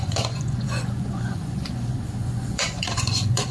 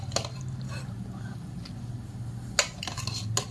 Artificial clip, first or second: first